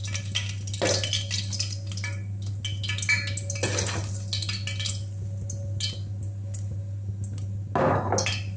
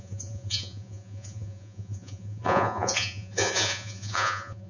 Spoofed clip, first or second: second